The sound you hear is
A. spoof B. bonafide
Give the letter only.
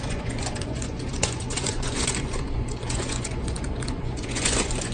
A